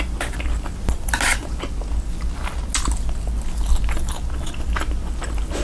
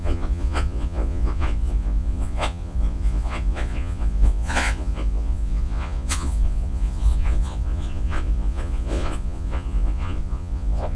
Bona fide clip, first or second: first